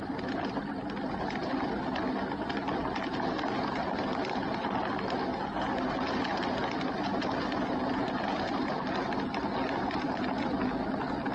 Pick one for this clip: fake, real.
real